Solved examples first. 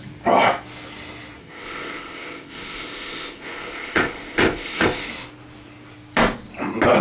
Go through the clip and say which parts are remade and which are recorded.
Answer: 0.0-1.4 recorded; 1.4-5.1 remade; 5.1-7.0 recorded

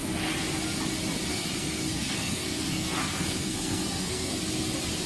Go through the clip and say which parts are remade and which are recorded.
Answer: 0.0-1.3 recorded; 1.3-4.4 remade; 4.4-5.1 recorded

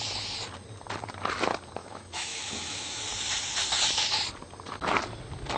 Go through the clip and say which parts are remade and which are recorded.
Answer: 0.0-1.8 recorded; 1.8-3.0 remade; 3.0-5.6 recorded